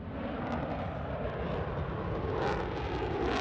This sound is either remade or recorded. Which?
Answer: recorded